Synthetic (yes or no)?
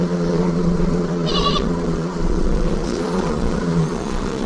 yes